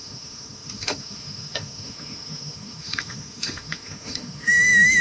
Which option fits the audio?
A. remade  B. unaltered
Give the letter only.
A